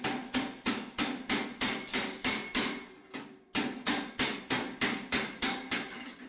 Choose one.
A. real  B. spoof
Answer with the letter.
A